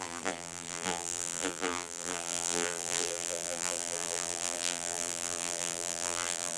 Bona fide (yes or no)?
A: no